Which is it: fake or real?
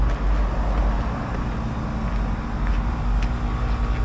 real